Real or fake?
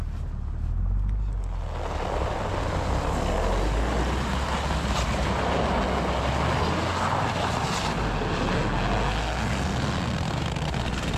real